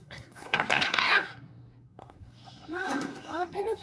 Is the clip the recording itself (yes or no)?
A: no